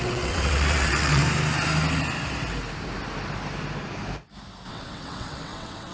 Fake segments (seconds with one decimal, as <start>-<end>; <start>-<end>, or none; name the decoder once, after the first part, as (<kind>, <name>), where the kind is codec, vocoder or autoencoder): 0.0-1.2 (vocoder, WaveNeXt); 4.7-5.9